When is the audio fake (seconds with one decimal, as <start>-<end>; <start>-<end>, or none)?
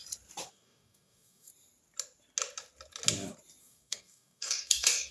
0.5-1.5; 3.6-5.1